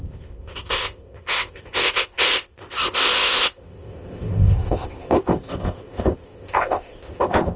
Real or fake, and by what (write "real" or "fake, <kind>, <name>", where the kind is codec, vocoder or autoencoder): fake, codec, ZipCodec